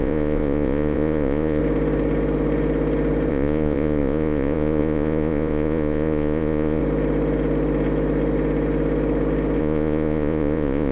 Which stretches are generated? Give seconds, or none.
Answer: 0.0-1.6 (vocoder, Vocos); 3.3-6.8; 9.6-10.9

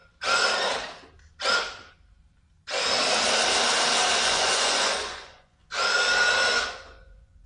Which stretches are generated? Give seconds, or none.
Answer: 4.2-5.6 (vocoder, Vocos); 6.5-7.5

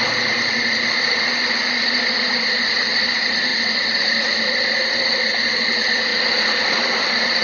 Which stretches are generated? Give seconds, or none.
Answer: none

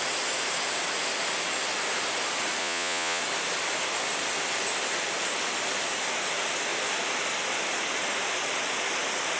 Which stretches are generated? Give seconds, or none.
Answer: 2.6-3.2 (vocoder, Vocos)

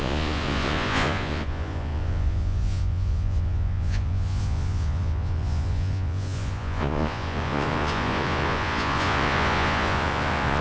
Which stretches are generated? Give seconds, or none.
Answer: 0.0-10.6 (vocoder, Vocos)

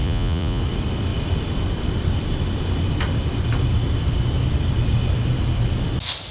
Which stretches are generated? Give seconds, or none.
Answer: 0.0-0.6 (vocoder, Vocos)

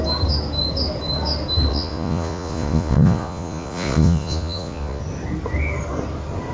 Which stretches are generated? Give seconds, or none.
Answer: 1.7-5.0 (vocoder, Vocos)